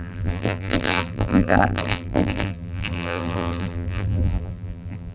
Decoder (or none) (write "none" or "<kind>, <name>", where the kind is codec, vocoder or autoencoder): vocoder, BigVGAN v2